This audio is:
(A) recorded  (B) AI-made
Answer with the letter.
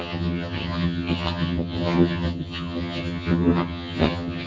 B